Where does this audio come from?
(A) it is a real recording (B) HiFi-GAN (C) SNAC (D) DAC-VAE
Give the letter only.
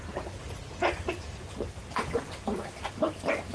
A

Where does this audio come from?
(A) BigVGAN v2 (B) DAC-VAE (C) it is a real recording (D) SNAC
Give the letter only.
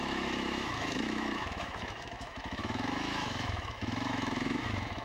B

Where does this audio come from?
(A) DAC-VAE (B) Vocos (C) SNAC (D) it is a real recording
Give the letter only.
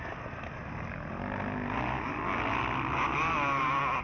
D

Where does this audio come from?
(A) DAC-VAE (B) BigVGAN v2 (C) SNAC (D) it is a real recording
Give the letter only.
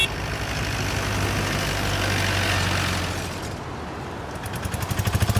D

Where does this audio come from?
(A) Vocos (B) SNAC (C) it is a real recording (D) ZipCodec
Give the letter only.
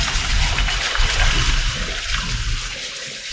C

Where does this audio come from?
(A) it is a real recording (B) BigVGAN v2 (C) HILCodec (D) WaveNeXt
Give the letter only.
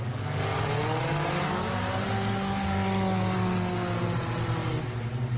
A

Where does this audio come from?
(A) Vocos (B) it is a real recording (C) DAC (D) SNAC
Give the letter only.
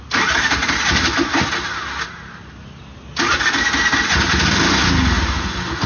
B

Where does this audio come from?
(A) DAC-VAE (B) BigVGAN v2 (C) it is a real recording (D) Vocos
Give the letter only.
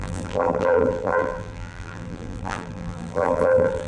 B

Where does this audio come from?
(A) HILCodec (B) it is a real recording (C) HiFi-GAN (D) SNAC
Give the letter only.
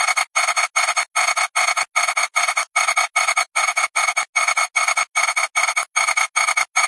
B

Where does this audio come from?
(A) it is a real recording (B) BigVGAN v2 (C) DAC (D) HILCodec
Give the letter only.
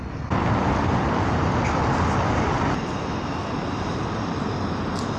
A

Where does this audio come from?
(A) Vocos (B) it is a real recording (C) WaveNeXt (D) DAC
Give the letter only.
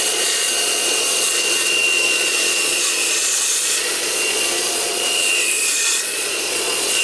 A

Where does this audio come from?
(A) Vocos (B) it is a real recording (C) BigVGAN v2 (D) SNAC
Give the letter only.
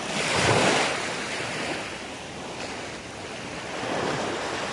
B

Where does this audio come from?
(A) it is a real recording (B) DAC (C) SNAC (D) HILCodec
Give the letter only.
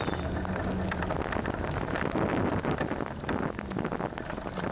A